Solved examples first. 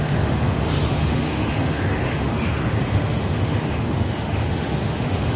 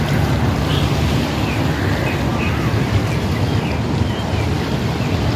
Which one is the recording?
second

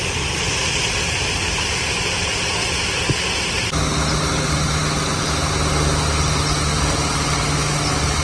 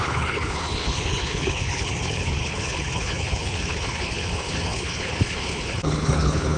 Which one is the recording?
first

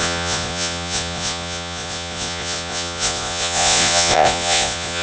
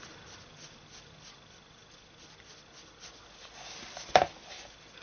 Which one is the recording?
second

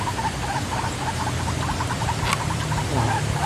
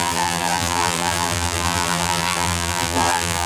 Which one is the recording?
first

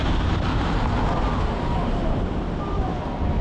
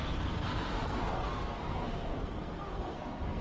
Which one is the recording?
first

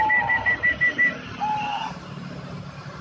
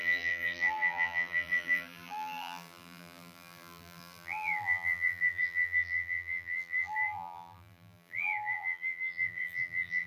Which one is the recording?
first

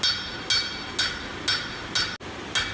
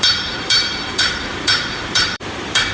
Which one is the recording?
first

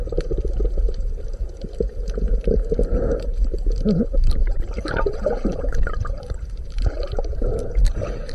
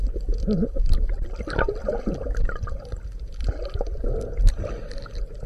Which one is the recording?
second